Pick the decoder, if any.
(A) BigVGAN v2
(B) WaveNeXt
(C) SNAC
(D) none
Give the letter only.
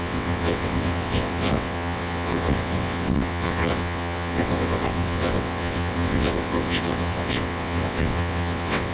B